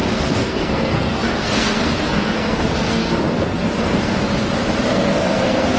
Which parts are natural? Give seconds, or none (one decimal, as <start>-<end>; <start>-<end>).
4.1-4.9